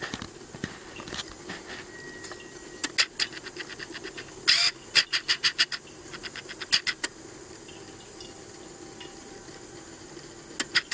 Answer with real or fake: real